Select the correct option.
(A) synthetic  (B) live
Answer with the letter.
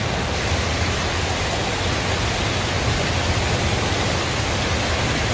B